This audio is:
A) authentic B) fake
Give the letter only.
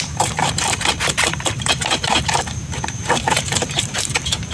B